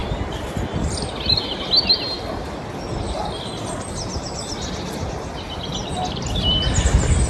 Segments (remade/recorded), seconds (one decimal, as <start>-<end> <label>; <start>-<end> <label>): 0.0-7.3 recorded